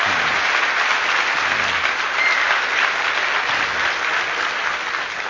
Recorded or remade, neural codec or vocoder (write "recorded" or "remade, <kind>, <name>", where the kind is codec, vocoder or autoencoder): recorded